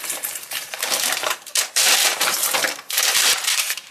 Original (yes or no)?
no